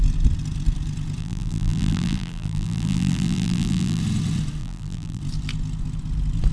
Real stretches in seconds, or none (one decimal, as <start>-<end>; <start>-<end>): 0.0-1.2; 4.0-4.6; 5.2-6.5